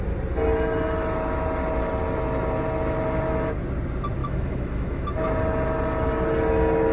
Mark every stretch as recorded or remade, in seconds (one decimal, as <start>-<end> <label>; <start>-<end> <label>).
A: 0.0-4.2 recorded; 4.2-5.4 remade; 5.4-6.9 recorded

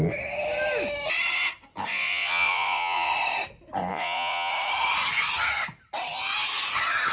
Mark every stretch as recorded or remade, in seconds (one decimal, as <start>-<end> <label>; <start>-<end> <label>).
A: 0.0-1.9 recorded; 1.9-3.1 remade; 3.1-3.9 recorded; 3.9-4.5 remade; 4.5-7.1 recorded